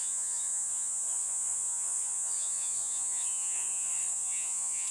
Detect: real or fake fake